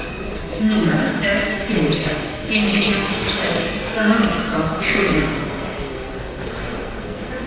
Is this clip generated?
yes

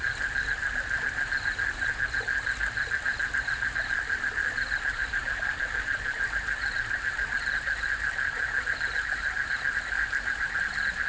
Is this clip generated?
no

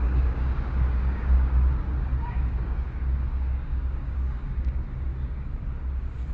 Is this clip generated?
yes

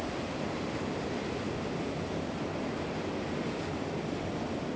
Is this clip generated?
no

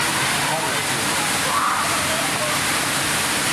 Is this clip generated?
no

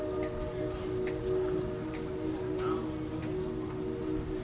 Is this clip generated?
no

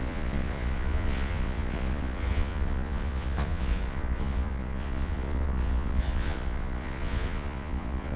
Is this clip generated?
yes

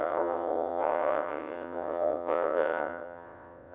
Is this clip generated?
yes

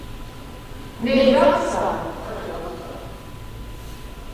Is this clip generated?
no